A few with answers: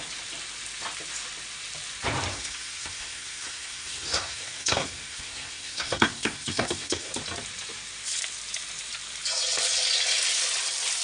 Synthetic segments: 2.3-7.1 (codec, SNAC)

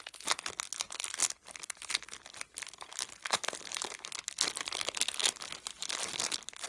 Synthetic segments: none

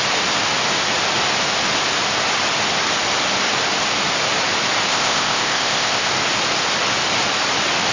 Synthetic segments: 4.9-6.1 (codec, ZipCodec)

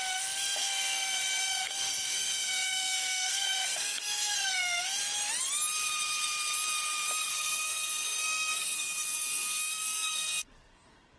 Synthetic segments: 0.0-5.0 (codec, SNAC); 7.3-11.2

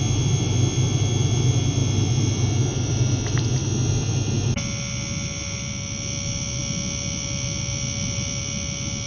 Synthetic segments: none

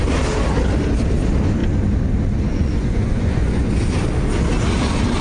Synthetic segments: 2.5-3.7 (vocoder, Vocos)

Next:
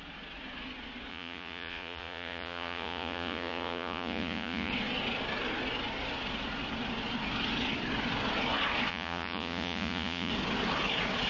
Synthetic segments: 1.1-4.7 (vocoder, Vocos); 8.9-10.3

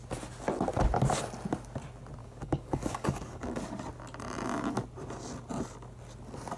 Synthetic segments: 2.2-3.6 (codec, DAC)